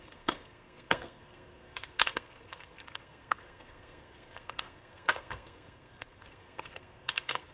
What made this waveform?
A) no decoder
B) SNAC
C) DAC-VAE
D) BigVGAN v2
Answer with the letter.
B